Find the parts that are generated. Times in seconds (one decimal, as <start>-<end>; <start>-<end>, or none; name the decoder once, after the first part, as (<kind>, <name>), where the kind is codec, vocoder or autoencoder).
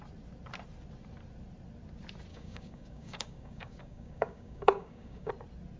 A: 2.3-5.3 (codec, DAC)